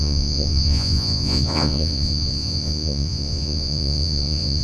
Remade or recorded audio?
remade